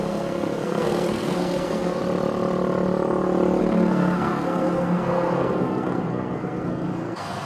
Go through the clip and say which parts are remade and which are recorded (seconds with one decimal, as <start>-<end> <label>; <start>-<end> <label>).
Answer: 0.0-2.0 remade; 2.0-3.6 recorded; 3.6-7.5 remade

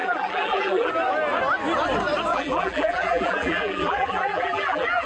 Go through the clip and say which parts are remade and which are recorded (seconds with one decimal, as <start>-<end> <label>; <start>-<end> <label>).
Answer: 0.0-0.9 remade; 0.9-2.3 recorded; 2.3-5.1 remade

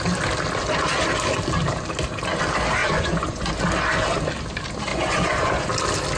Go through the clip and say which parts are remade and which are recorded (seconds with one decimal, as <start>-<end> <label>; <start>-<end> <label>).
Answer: 0.0-2.8 recorded; 2.8-3.5 remade; 3.5-4.9 recorded; 4.9-5.7 remade; 5.7-6.2 recorded

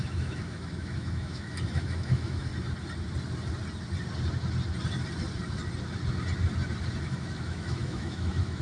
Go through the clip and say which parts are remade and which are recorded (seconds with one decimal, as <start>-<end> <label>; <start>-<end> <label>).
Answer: 0.0-2.5 remade; 2.5-7.0 recorded; 7.0-8.6 remade

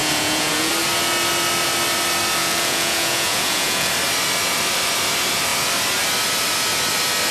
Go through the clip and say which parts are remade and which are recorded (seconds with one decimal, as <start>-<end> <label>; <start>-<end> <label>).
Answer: 0.0-0.7 remade; 0.7-2.4 recorded; 2.4-3.9 remade; 3.9-7.3 recorded